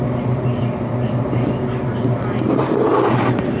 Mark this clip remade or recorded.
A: recorded